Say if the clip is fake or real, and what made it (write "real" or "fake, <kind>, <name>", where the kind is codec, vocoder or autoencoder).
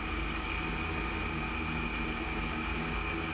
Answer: real